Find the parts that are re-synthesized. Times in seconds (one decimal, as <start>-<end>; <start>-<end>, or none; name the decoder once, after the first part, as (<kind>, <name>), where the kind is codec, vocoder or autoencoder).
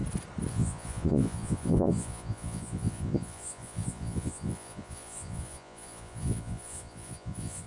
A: 0.5-7.7 (vocoder, Vocos)